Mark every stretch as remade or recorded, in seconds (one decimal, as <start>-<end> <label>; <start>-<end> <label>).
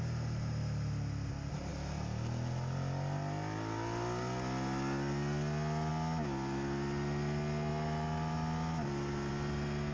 0.0-9.9 recorded